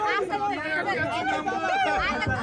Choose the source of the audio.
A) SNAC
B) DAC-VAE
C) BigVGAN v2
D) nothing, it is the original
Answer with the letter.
D